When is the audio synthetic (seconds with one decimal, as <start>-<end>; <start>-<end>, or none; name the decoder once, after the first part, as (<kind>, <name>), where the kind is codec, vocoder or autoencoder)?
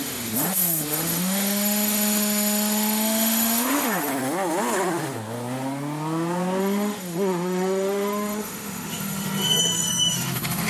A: 0.0-4.1 (autoencoder, DAC-VAE); 6.6-10.7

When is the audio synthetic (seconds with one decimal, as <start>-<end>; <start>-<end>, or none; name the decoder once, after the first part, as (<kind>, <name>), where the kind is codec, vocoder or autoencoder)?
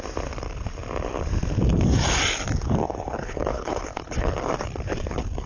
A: 2.8-4.3 (codec, HILCodec)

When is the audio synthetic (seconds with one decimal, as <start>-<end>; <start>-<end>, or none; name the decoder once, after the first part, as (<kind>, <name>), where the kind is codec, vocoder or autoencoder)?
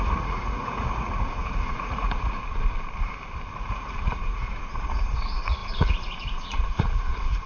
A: 0.0-2.4 (vocoder, Vocos); 3.5-7.5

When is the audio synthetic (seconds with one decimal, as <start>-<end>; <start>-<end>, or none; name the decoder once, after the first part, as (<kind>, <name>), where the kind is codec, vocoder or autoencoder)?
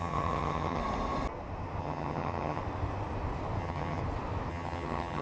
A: 0.0-0.8 (vocoder, HiFi-GAN); 1.8-2.6; 3.6-4.0; 4.5-5.2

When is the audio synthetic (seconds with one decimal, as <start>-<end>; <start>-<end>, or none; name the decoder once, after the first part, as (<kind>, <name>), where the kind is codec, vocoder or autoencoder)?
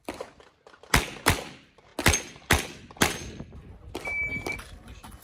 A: 0.0-1.9 (vocoder, BigVGAN v2); 3.0-5.2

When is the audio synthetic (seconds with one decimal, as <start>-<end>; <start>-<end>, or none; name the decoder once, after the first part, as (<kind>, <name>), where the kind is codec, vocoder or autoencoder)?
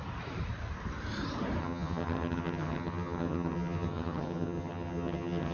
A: 1.6-5.5 (vocoder, HiFi-GAN)